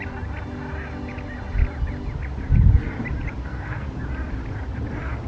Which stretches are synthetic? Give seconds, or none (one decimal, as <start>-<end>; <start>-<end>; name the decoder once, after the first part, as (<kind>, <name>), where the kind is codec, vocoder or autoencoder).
3.4-4.0 (codec, SNAC)